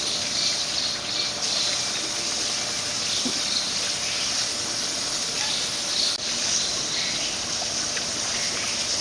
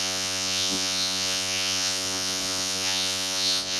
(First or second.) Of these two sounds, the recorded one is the first